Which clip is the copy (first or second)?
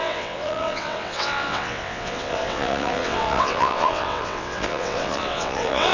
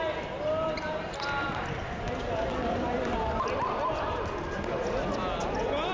first